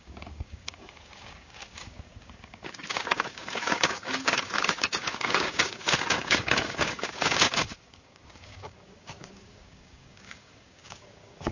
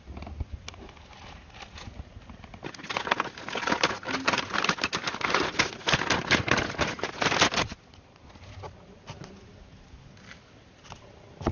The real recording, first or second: second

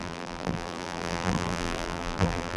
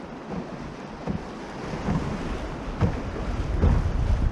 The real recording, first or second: second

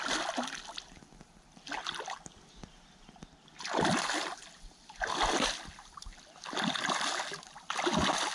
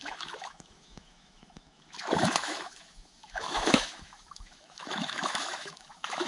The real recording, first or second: first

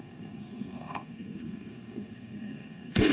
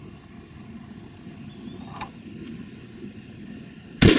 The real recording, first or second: second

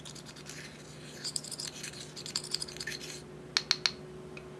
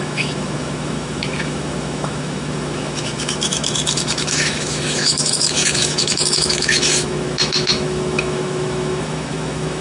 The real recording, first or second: first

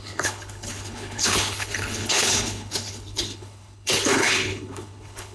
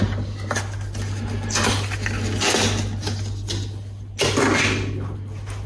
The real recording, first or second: second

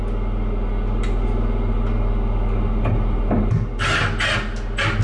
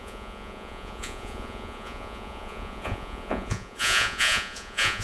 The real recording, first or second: first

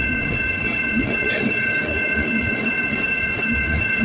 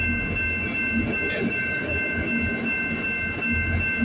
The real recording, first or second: second